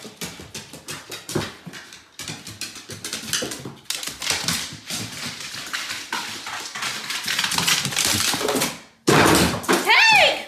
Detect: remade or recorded recorded